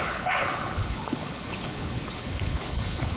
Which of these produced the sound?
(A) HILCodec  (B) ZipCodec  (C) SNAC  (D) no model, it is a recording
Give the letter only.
A